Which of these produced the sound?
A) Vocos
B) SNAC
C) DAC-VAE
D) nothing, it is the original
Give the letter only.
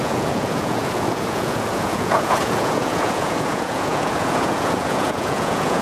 A